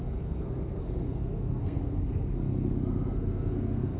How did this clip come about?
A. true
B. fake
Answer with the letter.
B